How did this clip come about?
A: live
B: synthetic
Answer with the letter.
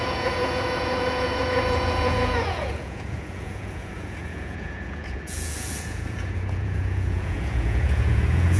B